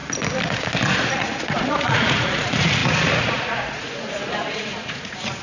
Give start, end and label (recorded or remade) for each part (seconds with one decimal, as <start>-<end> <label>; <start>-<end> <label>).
0.0-1.1 recorded; 1.1-5.4 remade